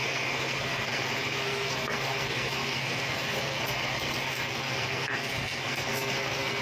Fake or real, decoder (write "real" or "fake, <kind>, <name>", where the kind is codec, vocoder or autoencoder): fake, codec, SNAC